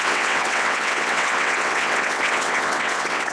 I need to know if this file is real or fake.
fake